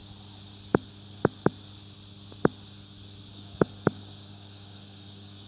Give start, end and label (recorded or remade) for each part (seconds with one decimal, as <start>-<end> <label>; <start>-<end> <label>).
0.0-3.3 recorded; 3.3-5.5 remade